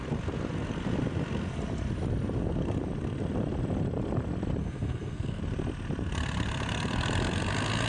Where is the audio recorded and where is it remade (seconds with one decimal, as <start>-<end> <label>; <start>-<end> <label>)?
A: 0.0-4.6 recorded; 4.6-5.4 remade; 5.4-7.9 recorded